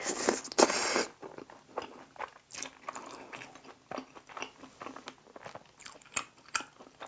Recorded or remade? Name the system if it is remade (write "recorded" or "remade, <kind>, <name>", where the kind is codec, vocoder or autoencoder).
recorded